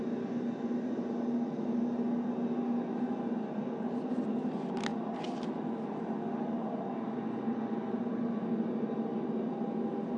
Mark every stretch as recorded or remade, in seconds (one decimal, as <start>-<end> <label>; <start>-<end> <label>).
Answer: 0.0-10.2 recorded